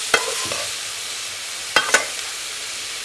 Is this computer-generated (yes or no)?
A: no